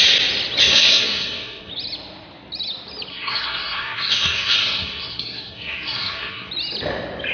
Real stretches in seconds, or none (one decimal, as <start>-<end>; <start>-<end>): 0.0-0.6; 1.7-3.1; 6.5-7.3